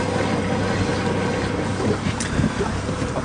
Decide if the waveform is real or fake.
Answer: real